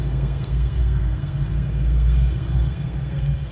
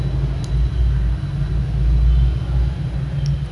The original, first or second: second